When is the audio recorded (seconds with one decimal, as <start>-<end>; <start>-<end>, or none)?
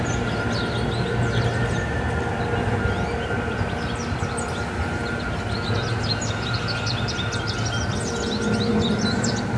0.0-9.6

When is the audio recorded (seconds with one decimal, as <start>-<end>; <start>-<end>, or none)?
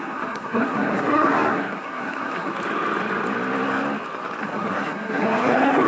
2.5-4.4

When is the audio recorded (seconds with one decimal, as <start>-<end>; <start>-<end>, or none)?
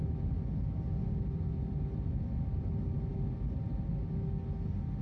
0.0-5.0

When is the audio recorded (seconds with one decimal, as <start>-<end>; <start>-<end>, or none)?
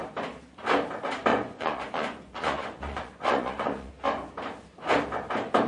0.0-1.3; 3.9-5.7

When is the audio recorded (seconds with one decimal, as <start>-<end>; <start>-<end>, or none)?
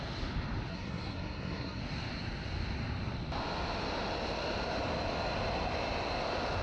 0.0-0.7; 1.8-6.6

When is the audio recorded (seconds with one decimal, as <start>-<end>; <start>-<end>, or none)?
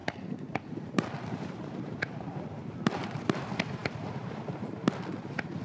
3.4-3.8; 4.4-5.6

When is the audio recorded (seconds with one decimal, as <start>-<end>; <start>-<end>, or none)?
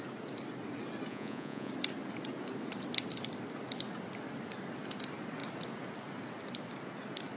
0.0-1.1; 1.7-7.4